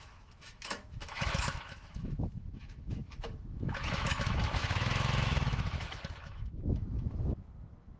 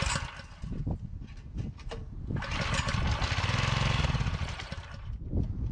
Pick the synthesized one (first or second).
first